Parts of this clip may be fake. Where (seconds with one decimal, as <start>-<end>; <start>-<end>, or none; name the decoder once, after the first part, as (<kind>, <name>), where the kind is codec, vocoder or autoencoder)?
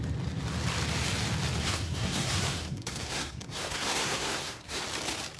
1.6-4.8 (codec, SNAC)